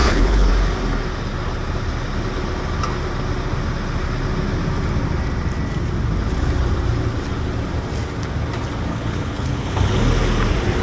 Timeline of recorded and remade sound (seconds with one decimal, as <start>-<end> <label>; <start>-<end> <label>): 0.0-0.5 remade; 0.5-8.9 recorded; 8.9-10.0 remade; 10.0-10.8 recorded